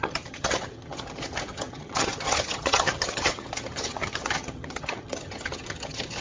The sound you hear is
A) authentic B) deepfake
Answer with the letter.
B